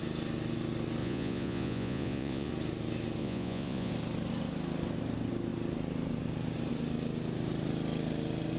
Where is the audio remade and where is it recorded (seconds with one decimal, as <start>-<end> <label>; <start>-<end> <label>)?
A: 0.0-1.0 recorded; 1.0-2.5 remade; 2.5-3.2 recorded; 3.2-3.9 remade; 3.9-8.6 recorded